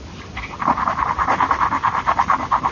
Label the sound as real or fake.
real